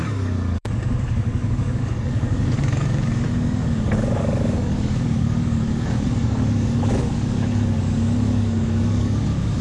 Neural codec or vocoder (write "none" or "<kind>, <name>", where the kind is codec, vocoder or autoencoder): codec, DAC